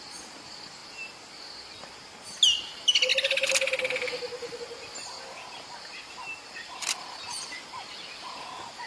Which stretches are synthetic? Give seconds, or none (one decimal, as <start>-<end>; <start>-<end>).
none

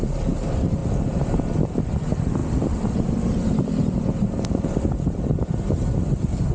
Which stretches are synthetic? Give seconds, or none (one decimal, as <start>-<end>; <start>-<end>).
0.8-1.6; 2.4-4.9